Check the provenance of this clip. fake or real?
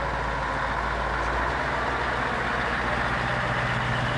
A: real